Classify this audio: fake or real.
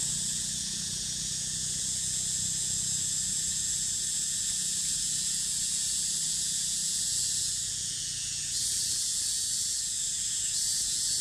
fake